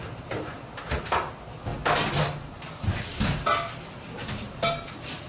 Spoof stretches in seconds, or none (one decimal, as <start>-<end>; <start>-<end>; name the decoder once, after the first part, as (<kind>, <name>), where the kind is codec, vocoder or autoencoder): 1.2-1.7 (vocoder, BigVGAN v2)